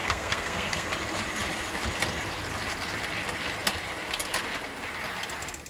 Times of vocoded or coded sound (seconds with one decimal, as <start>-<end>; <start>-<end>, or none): 0.0-0.9